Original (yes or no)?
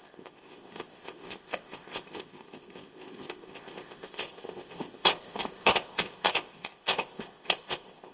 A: no